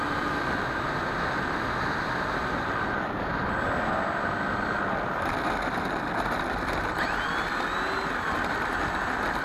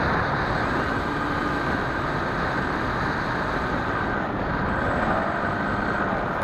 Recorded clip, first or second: first